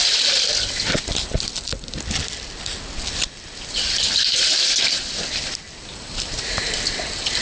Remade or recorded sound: recorded